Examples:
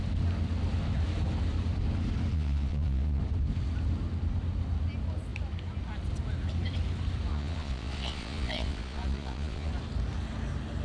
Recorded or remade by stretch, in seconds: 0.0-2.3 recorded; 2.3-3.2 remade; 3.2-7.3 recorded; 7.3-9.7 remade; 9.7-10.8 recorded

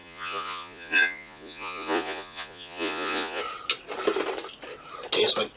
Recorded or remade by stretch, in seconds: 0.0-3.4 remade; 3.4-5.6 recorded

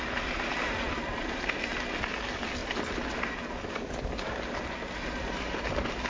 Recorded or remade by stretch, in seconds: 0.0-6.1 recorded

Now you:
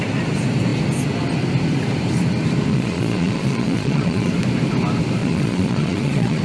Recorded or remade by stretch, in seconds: 0.0-2.7 recorded; 2.7-4.3 remade; 4.3-5.2 recorded; 5.2-6.4 remade

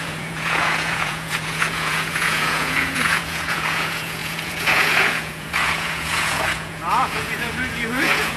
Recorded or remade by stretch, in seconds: 0.0-8.4 remade

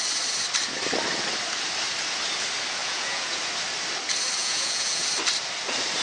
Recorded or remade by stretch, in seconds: 0.0-2.8 recorded; 2.8-3.4 remade; 3.4-4.4 recorded; 4.4-5.1 remade; 5.1-6.0 recorded

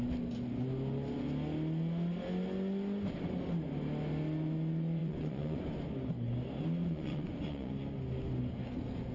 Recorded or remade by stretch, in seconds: 0.0-5.0 recorded; 5.0-5.7 remade; 5.7-6.8 recorded; 6.8-7.7 remade; 7.7-9.1 recorded